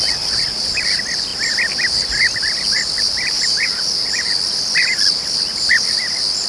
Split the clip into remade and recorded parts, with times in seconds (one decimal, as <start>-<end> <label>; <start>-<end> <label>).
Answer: 0.0-6.5 recorded